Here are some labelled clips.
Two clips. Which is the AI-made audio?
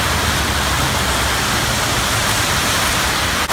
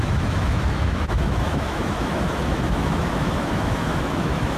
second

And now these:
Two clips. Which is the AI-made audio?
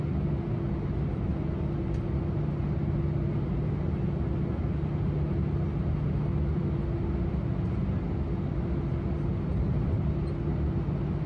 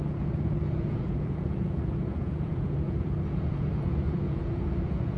second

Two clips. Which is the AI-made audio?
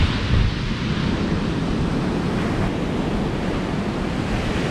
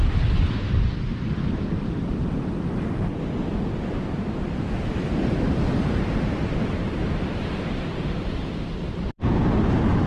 second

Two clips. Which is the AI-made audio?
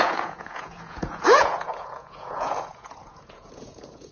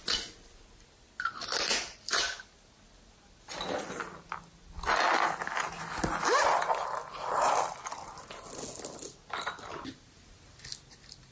first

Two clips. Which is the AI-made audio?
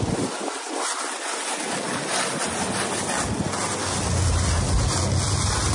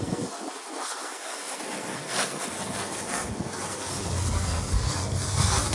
second